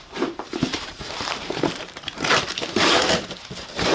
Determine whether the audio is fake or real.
fake